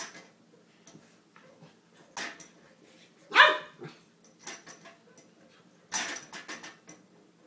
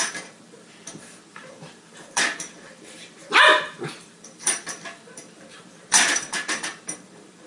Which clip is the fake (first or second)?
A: second